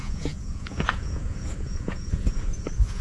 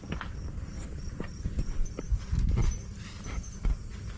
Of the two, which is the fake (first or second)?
first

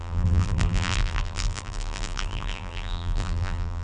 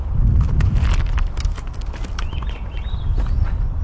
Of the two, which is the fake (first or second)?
first